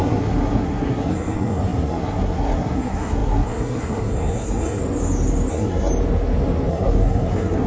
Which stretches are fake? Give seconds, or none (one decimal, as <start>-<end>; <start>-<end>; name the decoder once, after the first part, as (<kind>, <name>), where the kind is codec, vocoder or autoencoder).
0.0-4.8 (codec, SNAC); 5.5-5.9; 6.7-7.7